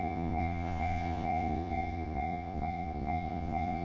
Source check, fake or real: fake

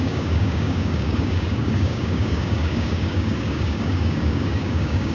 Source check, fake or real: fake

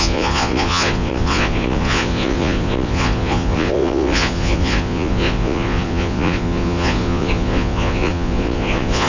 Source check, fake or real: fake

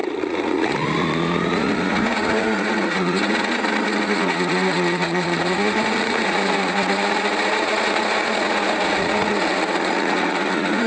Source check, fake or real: fake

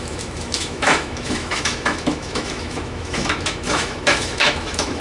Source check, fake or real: fake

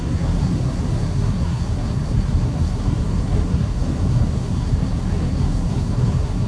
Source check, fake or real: fake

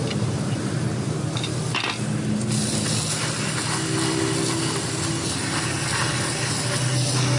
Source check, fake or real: real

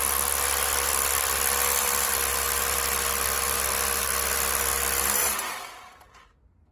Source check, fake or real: real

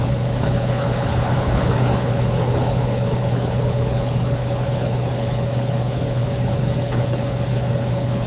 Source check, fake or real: fake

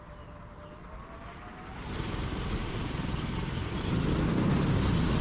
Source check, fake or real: real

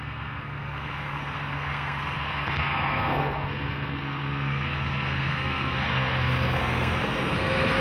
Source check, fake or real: fake